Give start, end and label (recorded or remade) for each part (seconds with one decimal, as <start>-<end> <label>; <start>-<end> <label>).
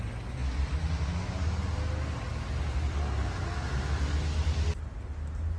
0.0-5.6 recorded